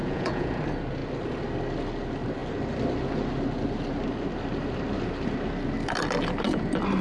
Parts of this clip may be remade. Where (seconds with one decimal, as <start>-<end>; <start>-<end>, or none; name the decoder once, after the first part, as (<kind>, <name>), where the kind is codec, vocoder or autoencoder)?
0.0-0.6 (vocoder, Vocos)